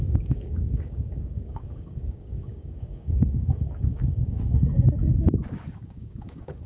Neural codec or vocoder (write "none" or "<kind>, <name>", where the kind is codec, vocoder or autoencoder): codec, DAC